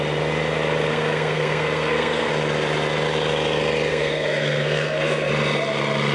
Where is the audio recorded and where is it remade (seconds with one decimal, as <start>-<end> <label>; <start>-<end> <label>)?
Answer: 0.0-0.9 recorded; 0.9-2.3 remade; 2.3-3.9 recorded; 3.9-5.3 remade; 5.3-6.1 recorded